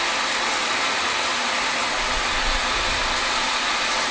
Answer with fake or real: real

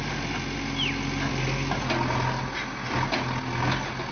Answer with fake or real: real